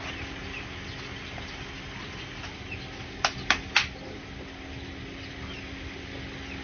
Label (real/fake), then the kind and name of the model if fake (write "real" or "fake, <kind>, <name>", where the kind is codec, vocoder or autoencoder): real